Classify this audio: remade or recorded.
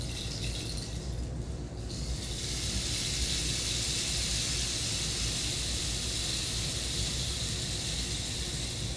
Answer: recorded